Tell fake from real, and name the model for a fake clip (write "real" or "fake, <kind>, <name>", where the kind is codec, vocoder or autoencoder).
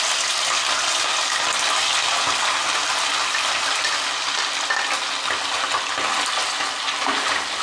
real